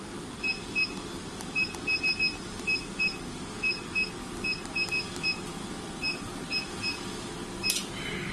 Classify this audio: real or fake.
real